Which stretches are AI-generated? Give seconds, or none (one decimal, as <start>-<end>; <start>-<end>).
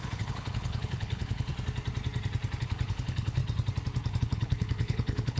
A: 0.0-1.5; 2.6-3.4; 4.2-5.4